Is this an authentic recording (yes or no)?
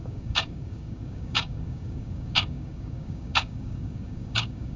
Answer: no